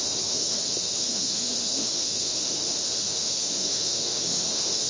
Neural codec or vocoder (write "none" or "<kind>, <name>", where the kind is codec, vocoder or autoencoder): autoencoder, DAC-VAE